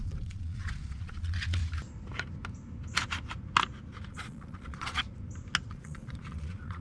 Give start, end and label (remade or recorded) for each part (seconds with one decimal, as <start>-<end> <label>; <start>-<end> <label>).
0.0-1.6 remade; 1.6-4.1 recorded; 4.1-5.0 remade; 5.0-5.7 recorded; 5.7-6.8 remade